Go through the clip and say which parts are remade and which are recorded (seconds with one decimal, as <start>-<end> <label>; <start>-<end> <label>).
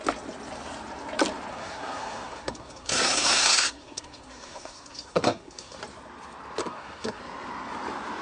0.0-1.5 recorded; 1.5-5.8 remade; 5.8-6.6 recorded; 6.6-7.2 remade; 7.2-8.2 recorded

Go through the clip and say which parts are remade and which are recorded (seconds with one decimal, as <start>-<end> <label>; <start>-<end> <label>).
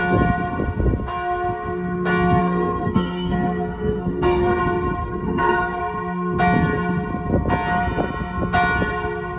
0.0-2.4 recorded; 2.4-4.6 remade; 4.6-5.0 recorded; 5.0-5.8 remade; 5.8-9.4 recorded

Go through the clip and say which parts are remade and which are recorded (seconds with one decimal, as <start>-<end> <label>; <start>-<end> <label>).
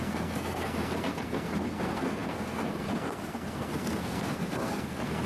0.0-5.3 remade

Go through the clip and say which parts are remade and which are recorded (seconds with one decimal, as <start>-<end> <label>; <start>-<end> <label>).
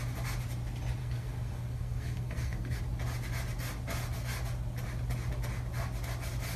0.0-1.0 recorded; 1.0-2.8 remade; 2.8-6.6 recorded